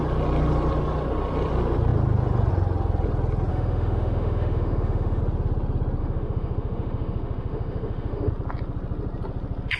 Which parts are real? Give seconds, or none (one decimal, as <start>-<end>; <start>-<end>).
0.0-3.5; 5.2-6.0; 8.3-9.8